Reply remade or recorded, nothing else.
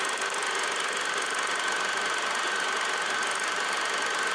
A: recorded